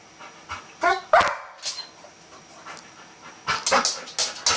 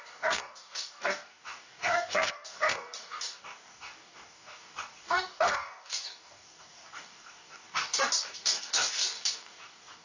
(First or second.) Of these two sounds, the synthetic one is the second